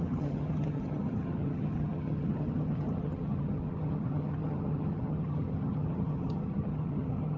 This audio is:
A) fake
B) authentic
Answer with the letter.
A